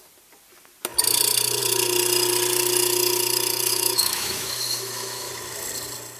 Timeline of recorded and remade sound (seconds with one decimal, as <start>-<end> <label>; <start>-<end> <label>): 0.0-3.7 recorded; 3.7-5.3 remade; 5.3-6.2 recorded